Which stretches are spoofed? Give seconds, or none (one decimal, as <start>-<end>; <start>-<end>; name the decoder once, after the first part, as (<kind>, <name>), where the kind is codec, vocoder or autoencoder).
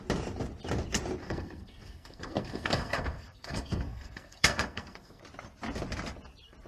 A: 1.2-5.2 (codec, SNAC)